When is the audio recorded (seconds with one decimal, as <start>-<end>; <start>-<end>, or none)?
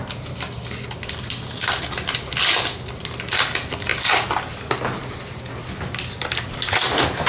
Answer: 0.0-7.3